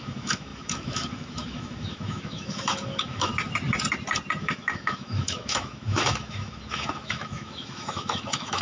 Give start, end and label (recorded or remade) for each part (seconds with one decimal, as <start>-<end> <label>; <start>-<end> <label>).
0.0-3.3 remade; 3.3-4.4 recorded; 4.4-8.6 remade